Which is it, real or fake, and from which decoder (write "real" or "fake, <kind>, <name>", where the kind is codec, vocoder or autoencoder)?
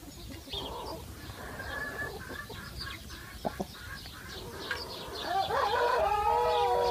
real